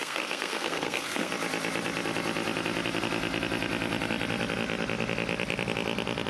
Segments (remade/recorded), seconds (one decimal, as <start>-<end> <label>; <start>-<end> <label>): 0.0-1.3 remade; 1.3-6.3 recorded